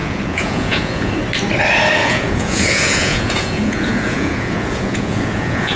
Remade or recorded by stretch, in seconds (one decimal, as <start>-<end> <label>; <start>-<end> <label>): 0.0-1.1 remade; 1.1-2.0 recorded; 2.0-5.8 remade